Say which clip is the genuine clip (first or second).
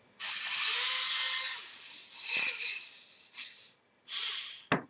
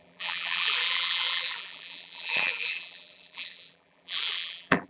first